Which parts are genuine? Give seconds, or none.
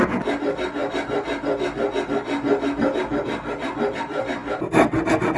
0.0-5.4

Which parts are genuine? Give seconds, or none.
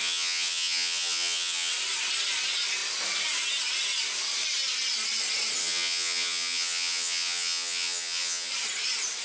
1.7-5.6; 8.5-9.2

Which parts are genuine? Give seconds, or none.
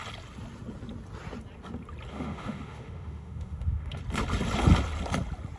0.0-2.1; 4.0-5.6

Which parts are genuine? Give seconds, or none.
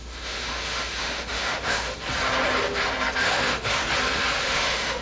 1.9-3.2; 3.8-4.4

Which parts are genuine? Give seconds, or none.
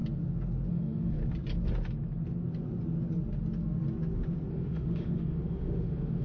0.0-0.7; 1.2-4.5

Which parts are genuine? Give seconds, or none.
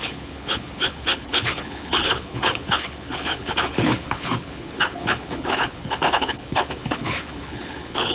none